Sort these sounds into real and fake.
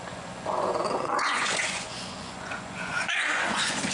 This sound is fake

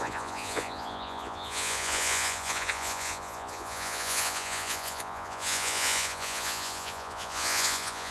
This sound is fake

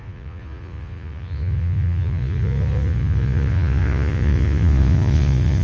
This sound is fake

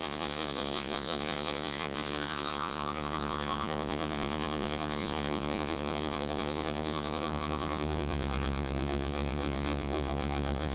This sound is fake